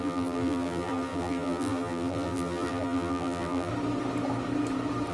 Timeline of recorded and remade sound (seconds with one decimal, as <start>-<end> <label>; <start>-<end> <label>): 0.0-3.7 remade; 3.7-5.1 recorded